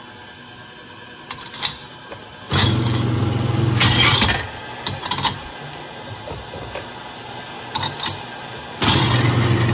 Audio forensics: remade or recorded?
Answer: recorded